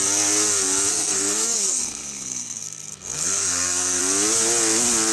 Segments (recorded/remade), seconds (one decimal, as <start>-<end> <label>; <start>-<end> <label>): 0.0-0.9 recorded; 0.9-4.0 remade; 4.0-5.1 recorded